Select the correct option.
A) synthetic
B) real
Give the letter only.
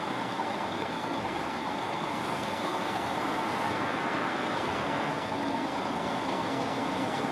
A